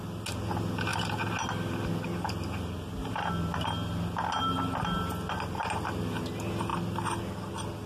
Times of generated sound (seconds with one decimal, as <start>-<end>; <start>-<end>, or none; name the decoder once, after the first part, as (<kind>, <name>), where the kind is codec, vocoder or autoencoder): none